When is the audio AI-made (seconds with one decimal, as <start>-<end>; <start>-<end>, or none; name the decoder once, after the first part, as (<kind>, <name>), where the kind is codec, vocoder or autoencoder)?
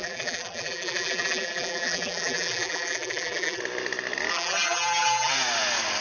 0.0-3.6 (vocoder, BigVGAN v2); 4.3-5.3